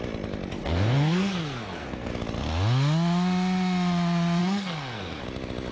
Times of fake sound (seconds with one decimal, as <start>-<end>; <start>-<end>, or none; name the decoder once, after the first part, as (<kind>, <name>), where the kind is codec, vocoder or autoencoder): 0.6-2.1 (codec, SNAC); 4.4-5.2